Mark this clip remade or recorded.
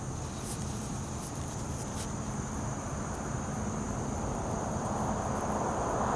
remade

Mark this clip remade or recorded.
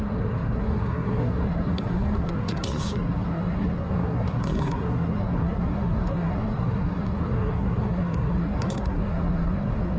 remade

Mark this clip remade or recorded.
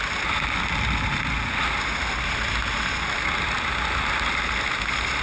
recorded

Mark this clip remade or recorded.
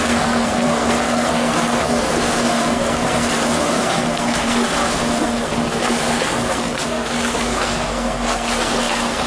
remade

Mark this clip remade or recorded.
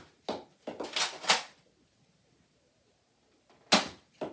recorded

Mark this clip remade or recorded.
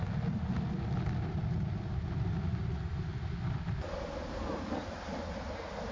recorded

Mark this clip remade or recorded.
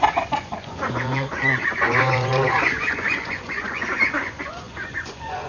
remade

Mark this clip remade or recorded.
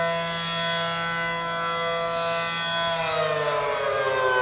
recorded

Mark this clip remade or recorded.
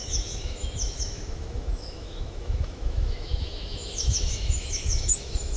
remade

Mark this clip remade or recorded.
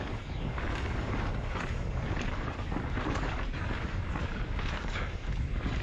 remade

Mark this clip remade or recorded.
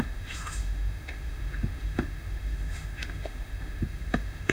remade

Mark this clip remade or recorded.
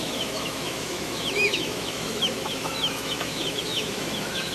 remade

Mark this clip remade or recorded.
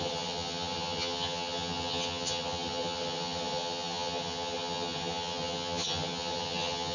remade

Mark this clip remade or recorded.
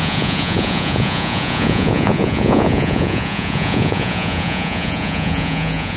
remade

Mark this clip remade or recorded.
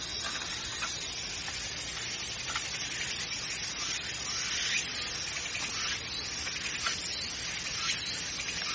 recorded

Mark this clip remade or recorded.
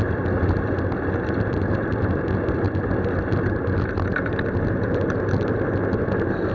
recorded